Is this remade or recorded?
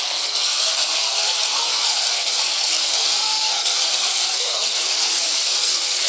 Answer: remade